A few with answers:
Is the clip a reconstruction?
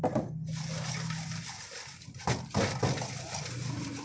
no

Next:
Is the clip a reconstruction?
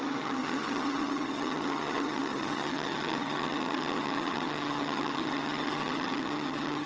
yes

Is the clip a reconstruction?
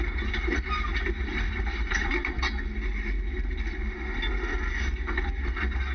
no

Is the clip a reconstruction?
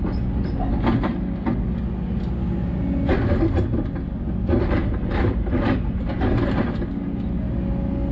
no